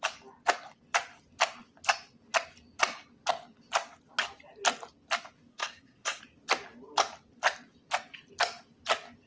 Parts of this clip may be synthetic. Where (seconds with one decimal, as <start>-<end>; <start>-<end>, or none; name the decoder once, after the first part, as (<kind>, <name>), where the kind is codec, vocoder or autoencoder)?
5.5-6.2 (codec, SNAC)